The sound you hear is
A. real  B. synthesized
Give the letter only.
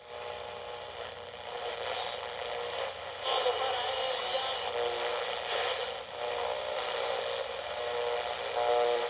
A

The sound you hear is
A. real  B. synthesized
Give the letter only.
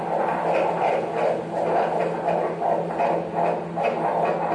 A